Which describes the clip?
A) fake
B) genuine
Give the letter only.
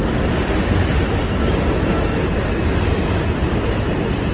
B